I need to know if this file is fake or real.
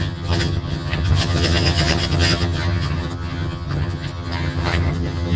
fake